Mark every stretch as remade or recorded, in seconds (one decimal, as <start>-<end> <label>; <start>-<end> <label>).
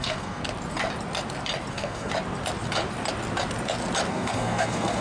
0.0-0.4 remade; 0.4-1.7 recorded; 1.7-2.1 remade; 2.1-4.1 recorded; 4.1-5.0 remade